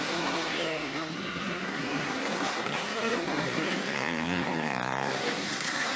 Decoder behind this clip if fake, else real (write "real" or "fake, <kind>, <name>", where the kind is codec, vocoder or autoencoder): fake, codec, SNAC